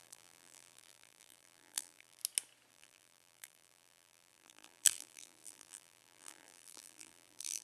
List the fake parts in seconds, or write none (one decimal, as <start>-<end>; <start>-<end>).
0.0-2.2; 2.7-7.6